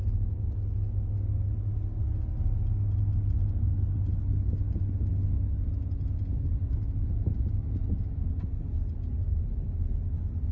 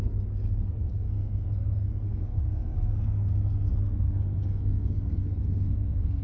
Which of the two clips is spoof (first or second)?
second